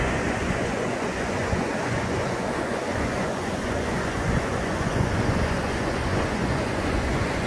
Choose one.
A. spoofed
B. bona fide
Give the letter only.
A